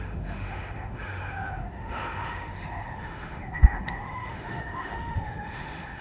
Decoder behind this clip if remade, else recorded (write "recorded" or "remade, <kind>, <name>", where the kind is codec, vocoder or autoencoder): remade, autoencoder, DAC-VAE